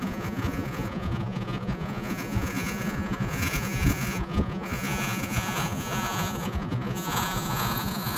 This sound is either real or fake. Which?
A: fake